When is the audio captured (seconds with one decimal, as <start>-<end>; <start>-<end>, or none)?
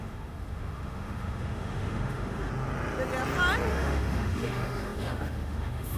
2.5-3.7